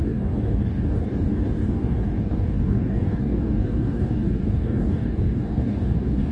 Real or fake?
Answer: fake